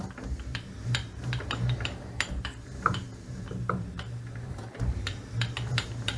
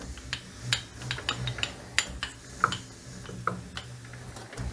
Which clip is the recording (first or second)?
second